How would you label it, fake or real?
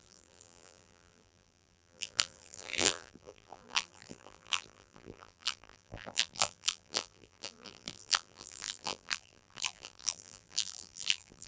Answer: fake